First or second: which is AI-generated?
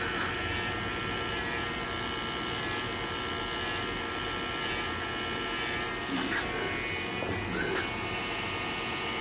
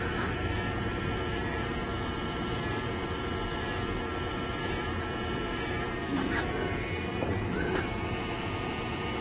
second